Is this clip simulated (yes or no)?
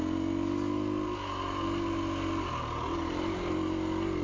no